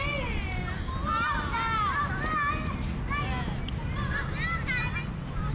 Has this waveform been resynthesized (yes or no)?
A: no